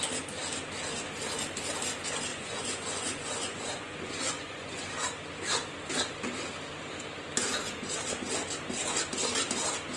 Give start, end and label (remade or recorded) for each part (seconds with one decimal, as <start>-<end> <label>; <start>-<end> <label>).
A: 0.0-2.3 recorded; 2.3-4.9 remade; 4.9-10.0 recorded